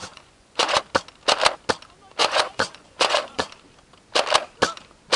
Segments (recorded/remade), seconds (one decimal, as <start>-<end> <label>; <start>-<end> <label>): 0.0-0.8 remade; 0.8-2.2 recorded; 2.2-3.5 remade; 3.5-5.2 recorded